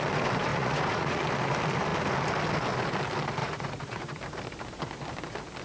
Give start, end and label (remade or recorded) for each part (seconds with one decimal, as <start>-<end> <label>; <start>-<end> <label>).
0.0-0.5 recorded; 0.5-1.2 remade; 1.2-3.4 recorded; 3.4-4.2 remade; 4.2-5.6 recorded